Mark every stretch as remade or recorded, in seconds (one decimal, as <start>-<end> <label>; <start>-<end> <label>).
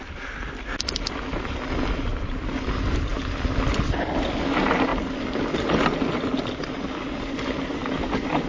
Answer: 0.0-8.5 recorded